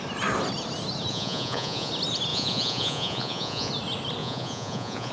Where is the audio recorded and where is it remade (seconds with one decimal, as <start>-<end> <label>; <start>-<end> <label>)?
0.0-1.1 recorded; 1.1-1.9 remade; 1.9-2.3 recorded; 2.3-3.7 remade; 3.7-4.2 recorded; 4.2-5.1 remade

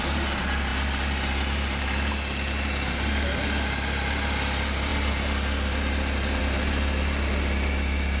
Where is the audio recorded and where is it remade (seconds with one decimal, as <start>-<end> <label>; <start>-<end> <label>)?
0.0-8.2 recorded

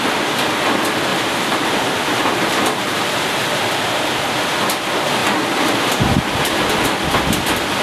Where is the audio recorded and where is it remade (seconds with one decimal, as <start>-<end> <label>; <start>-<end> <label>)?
0.0-1.1 recorded; 1.1-4.2 remade; 4.2-7.8 recorded

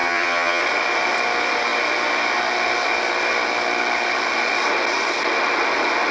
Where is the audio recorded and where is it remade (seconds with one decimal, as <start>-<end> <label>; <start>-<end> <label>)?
0.0-0.6 remade; 0.6-6.1 recorded